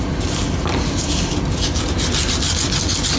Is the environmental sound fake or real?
real